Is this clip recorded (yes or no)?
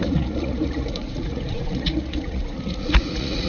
no